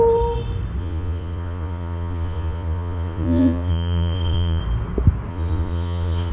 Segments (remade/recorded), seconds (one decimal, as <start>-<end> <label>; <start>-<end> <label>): 0.0-0.8 recorded; 0.8-4.6 remade; 4.6-5.3 recorded; 5.3-6.3 remade